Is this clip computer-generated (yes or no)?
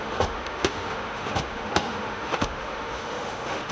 yes